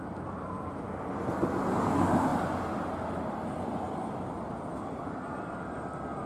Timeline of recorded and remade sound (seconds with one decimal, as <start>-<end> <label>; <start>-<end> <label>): 0.0-6.3 recorded